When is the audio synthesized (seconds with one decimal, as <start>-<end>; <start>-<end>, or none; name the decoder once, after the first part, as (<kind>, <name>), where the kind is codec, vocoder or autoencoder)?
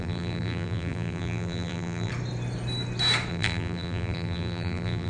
0.0-2.1 (vocoder, BigVGAN v2); 3.3-5.1